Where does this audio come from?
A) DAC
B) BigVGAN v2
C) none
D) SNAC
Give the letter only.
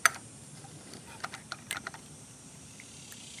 B